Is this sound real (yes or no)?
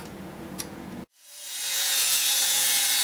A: no